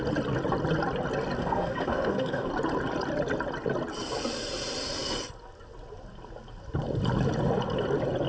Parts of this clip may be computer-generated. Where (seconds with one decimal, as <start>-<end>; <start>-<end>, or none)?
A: 1.4-2.5

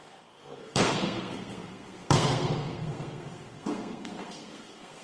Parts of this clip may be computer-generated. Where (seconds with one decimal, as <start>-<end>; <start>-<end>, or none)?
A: 0.0-5.0

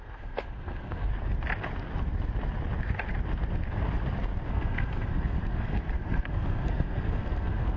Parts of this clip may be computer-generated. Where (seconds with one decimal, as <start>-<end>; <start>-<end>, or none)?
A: 0.0-1.1; 4.5-7.8

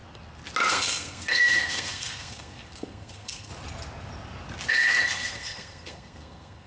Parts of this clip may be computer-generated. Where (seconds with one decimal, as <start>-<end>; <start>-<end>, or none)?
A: 0.7-3.5; 4.7-6.7

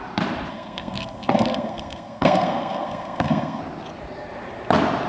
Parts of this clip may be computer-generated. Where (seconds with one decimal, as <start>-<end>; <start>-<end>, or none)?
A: 0.5-3.6

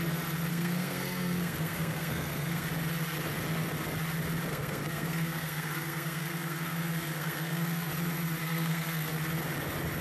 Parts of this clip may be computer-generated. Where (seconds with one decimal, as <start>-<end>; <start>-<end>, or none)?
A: 0.5-2.7; 4.5-7.9; 8.4-9.2